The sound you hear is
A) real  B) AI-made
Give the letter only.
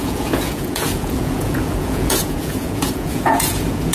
B